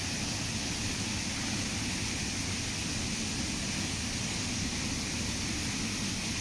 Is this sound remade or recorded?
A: recorded